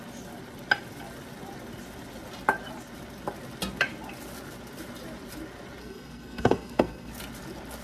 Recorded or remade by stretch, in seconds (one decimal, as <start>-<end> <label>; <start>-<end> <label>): 0.0-5.8 recorded; 5.8-7.1 remade; 7.1-7.8 recorded